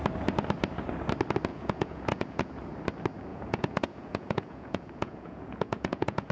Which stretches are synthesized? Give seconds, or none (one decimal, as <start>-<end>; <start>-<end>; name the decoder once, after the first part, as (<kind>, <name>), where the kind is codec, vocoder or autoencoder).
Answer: 1.5-2.5 (vocoder, Vocos); 3.3-6.3